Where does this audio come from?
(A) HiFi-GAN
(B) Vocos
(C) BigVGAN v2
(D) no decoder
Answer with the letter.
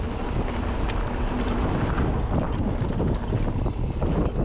D